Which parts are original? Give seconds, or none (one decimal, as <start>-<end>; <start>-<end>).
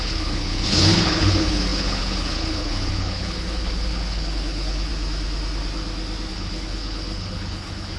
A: 4.9-6.3